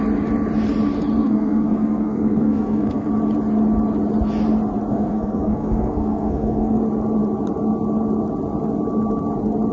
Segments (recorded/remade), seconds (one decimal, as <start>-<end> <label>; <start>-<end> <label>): 0.0-1.2 recorded; 1.2-3.1 remade; 3.1-4.9 recorded; 4.9-6.8 remade; 6.8-9.7 recorded